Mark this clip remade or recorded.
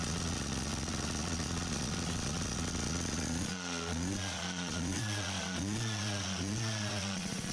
remade